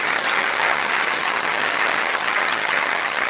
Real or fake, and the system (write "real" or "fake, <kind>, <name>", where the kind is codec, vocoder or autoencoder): fake, vocoder, HiFi-GAN